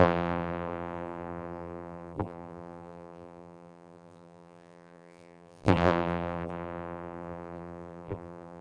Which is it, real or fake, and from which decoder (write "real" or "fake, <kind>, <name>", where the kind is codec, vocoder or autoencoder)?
fake, vocoder, BigVGAN v2